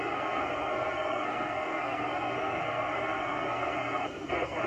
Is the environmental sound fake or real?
fake